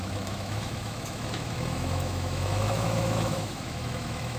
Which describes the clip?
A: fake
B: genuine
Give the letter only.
A